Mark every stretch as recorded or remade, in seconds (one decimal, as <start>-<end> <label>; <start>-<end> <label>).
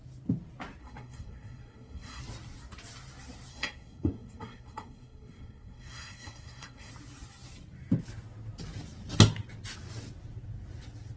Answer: 0.0-0.8 recorded; 0.8-2.2 remade; 2.2-3.5 recorded; 3.5-6.9 remade; 6.9-11.2 recorded